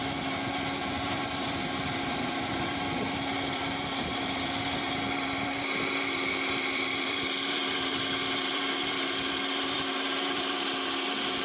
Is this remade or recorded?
remade